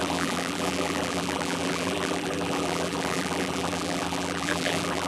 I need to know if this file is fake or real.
fake